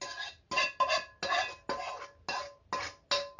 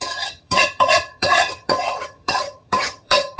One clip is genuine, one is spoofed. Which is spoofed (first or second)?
second